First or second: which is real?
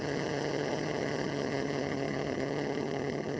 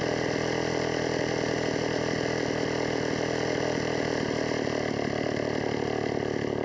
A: second